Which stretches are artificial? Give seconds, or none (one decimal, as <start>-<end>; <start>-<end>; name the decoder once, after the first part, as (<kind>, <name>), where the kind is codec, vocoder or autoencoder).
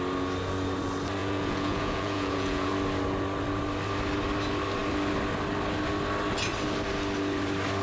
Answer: 1.2-2.7 (vocoder, Vocos)